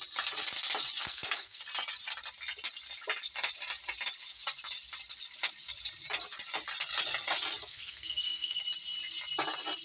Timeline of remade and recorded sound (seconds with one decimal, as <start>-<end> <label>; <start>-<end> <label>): 0.0-1.0 recorded; 1.0-1.6 remade; 1.6-7.7 recorded; 7.7-8.6 remade; 8.6-9.8 recorded

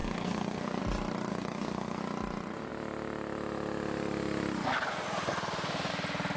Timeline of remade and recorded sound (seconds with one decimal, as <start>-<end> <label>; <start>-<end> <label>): 0.0-0.8 remade; 0.8-1.3 recorded; 1.3-2.0 remade; 2.0-6.4 recorded

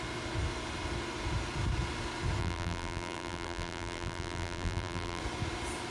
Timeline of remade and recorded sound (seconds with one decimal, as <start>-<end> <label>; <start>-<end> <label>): 0.0-2.4 recorded; 2.4-5.2 remade; 5.2-5.9 recorded

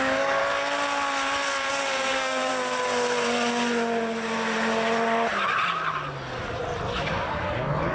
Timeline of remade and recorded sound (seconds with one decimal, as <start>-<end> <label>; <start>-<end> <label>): 0.0-0.4 remade; 0.4-1.7 recorded; 1.7-2.5 remade; 2.5-7.0 recorded; 7.0-7.9 remade